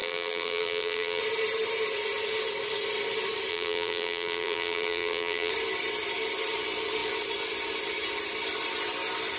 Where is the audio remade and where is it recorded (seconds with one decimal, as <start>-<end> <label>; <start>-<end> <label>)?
0.0-1.2 remade; 1.2-3.5 recorded; 3.5-5.5 remade; 5.5-9.4 recorded